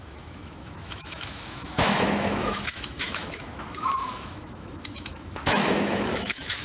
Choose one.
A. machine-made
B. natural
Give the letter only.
A